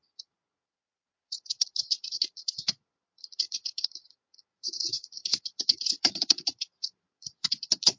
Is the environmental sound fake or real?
fake